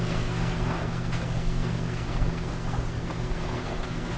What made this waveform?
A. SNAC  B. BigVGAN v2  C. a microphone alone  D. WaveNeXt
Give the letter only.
A